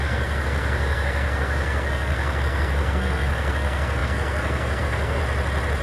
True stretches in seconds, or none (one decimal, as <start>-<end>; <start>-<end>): 5.2-5.8